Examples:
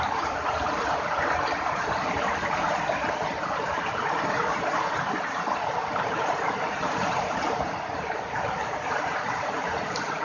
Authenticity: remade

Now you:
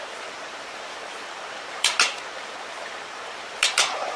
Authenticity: remade